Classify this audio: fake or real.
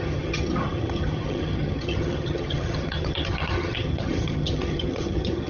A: fake